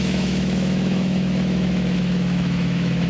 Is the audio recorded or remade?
remade